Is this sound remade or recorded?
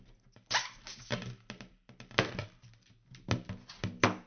recorded